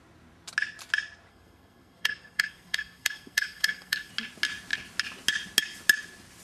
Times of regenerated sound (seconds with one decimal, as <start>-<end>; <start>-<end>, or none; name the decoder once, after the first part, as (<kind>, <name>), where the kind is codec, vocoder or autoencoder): 1.3-4.1 (codec, SNAC)